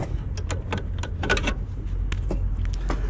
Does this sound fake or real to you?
real